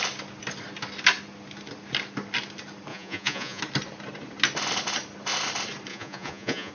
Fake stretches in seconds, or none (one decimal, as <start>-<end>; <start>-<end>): 2.9-3.6; 5.9-6.7